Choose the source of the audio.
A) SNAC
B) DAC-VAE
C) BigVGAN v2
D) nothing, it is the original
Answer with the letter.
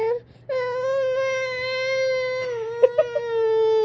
D